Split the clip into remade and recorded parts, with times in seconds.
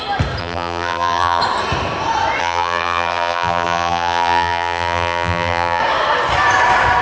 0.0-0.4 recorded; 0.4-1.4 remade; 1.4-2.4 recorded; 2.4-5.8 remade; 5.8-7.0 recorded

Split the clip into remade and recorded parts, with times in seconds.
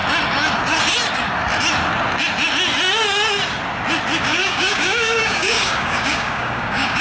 0.0-4.2 recorded; 4.2-7.0 remade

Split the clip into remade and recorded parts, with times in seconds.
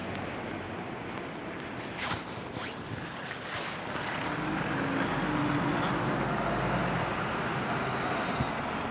0.0-8.9 recorded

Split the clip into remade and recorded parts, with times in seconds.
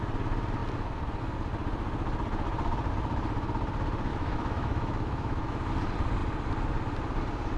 0.0-4.1 recorded; 4.1-5.7 remade; 5.7-7.6 recorded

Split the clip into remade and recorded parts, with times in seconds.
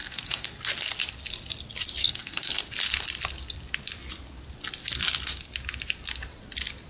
0.0-0.5 remade; 0.5-2.0 recorded; 2.0-2.6 remade; 2.6-6.9 recorded